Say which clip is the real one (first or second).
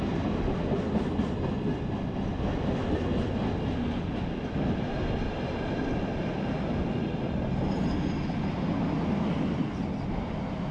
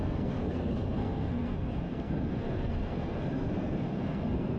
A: first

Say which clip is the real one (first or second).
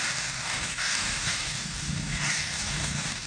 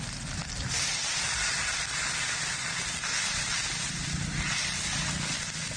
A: second